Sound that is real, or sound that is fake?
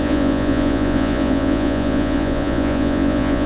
fake